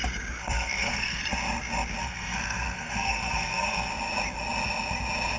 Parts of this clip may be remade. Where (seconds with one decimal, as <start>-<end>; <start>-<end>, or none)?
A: 0.4-1.2; 2.0-3.9